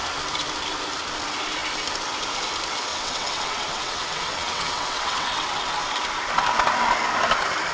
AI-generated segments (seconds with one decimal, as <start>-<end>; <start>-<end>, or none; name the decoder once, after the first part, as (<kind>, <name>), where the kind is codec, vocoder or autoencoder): 2.9-5.6 (vocoder, WaveNeXt)